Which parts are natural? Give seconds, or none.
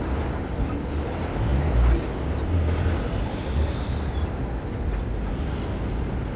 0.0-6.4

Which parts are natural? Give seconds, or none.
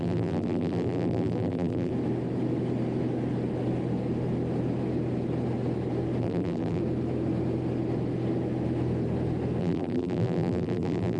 1.9-6.2; 6.8-9.6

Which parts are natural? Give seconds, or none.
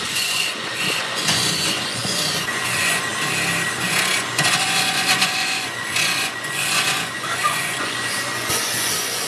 3.1-3.7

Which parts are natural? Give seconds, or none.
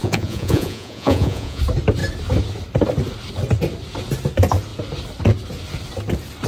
1.6-6.5